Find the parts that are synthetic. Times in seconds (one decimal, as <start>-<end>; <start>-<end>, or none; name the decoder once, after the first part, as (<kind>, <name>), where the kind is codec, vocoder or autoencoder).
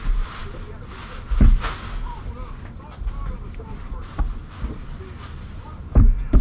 none